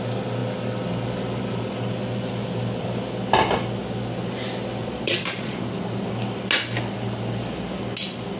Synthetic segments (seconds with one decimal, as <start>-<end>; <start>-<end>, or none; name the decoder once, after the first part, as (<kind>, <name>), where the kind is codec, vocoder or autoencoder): 4.8-5.6 (vocoder, Vocos)